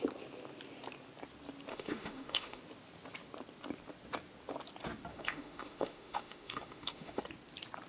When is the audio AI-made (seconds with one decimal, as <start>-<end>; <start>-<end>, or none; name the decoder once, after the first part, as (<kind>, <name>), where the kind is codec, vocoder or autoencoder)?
1.7-2.6 (autoencoder, DAC-VAE); 5.1-7.2